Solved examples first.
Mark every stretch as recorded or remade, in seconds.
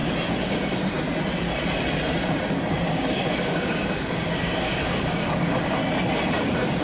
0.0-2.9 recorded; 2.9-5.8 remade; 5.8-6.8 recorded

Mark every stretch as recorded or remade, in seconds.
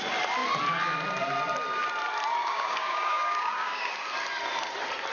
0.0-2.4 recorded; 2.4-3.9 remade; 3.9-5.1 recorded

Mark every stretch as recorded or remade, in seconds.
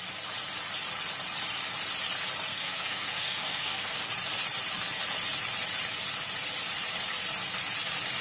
0.0-2.5 recorded; 2.5-4.1 remade; 4.1-8.2 recorded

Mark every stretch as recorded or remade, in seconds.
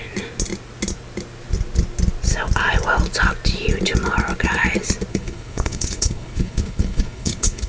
0.0-5.1 recorded; 5.1-7.7 remade